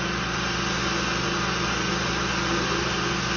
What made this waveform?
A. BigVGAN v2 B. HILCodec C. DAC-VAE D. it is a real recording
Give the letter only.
D